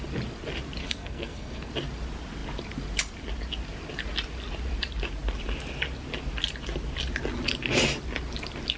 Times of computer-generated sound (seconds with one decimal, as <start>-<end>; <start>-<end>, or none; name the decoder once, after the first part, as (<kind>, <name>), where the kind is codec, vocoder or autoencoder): 0.8-1.7 (codec, SNAC)